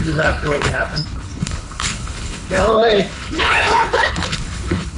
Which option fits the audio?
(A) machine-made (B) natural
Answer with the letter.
A